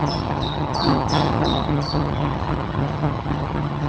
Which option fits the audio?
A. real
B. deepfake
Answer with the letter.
B